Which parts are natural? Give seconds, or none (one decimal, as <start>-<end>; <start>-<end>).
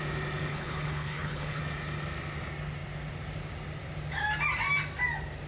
0.0-0.5; 1.6-5.5